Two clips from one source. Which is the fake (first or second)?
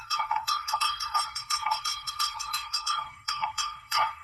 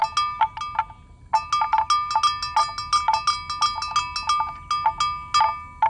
first